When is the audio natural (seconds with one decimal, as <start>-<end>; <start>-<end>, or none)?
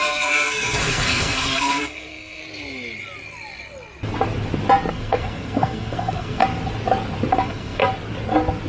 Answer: 2.4-4.9; 6.4-7.3; 7.8-8.7